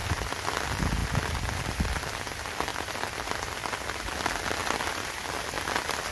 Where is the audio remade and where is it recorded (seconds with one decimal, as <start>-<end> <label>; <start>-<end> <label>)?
0.0-6.1 recorded